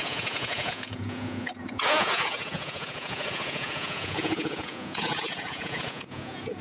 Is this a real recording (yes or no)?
no